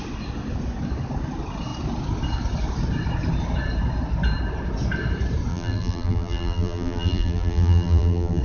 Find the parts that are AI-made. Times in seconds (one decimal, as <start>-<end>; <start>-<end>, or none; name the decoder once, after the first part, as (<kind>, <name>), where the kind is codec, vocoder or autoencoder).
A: 5.5-8.4 (vocoder, BigVGAN v2)